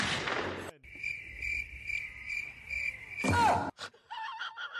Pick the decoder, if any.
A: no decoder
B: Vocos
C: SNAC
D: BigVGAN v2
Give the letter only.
A